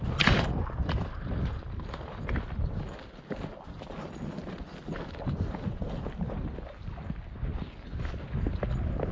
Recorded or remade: recorded